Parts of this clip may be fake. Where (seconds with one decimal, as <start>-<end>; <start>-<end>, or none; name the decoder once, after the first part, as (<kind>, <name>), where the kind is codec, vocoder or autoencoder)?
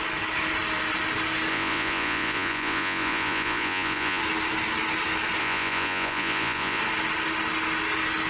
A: 1.5-4.2 (vocoder, Vocos); 5.4-6.8